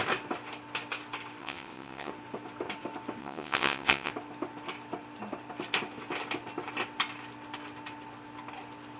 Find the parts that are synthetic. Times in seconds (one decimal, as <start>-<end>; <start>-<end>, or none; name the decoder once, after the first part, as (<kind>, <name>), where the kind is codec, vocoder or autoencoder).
1.4-2.1 (vocoder, WaveNeXt); 3.2-4.1